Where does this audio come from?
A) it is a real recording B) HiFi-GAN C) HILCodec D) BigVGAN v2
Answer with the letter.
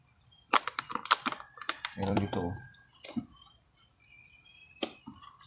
D